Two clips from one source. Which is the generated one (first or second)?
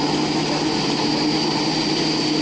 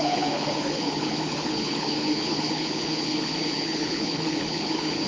second